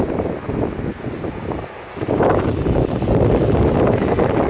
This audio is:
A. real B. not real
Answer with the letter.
A